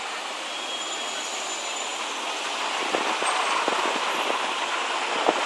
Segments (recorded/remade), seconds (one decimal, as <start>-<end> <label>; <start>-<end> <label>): 0.0-5.5 recorded